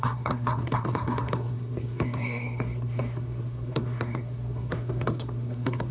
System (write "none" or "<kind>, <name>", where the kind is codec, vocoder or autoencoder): codec, SNAC